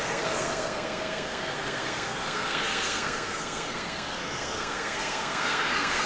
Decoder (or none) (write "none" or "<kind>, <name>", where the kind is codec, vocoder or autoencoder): codec, SNAC